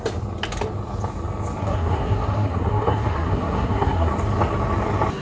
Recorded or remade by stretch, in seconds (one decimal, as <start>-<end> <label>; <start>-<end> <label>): 0.0-1.6 recorded; 1.6-4.1 remade; 4.1-5.2 recorded

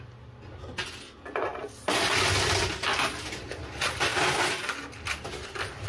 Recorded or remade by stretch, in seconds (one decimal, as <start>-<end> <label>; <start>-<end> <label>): 0.0-5.9 recorded

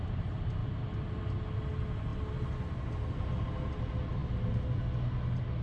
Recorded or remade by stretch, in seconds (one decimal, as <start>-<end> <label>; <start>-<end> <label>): 0.0-5.6 recorded

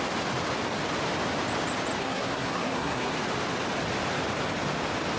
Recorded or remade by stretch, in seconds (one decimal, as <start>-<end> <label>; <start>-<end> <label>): 0.0-2.0 recorded; 2.0-3.1 remade; 3.1-5.2 recorded

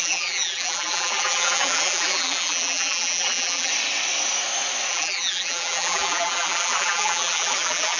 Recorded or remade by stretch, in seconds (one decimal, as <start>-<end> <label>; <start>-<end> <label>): 0.0-3.7 remade; 3.7-4.9 recorded; 4.9-8.0 remade

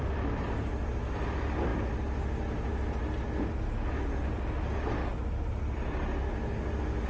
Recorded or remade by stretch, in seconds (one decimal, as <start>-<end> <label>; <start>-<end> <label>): 0.0-7.1 recorded

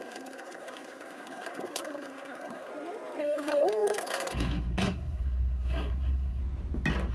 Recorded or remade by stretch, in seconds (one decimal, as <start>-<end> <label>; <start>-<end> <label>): 0.0-2.7 remade; 2.7-3.2 recorded; 3.2-6.4 remade; 6.4-7.1 recorded

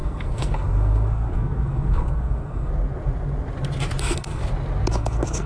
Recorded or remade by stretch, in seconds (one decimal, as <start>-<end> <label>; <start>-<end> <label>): 0.0-2.7 remade; 2.7-4.0 recorded; 4.0-4.4 remade; 4.4-4.9 recorded; 4.9-5.5 remade